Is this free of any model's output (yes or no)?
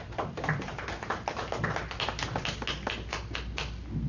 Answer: yes